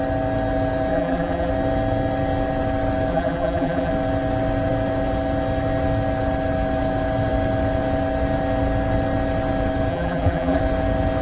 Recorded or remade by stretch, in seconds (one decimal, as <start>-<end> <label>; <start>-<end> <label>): 0.0-0.9 recorded; 0.9-1.5 remade; 1.5-3.1 recorded; 3.1-3.9 remade; 3.9-9.9 recorded; 9.9-10.6 remade; 10.6-11.2 recorded